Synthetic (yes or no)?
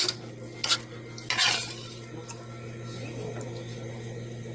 no